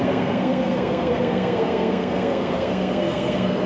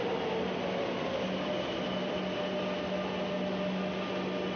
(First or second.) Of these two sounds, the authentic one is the second